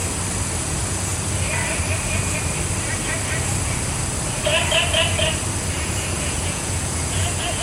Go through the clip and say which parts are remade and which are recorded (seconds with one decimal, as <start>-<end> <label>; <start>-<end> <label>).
0.0-0.6 recorded; 0.6-1.1 remade; 1.1-5.7 recorded; 5.7-7.6 remade